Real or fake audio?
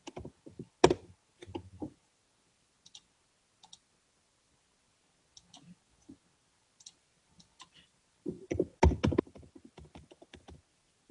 real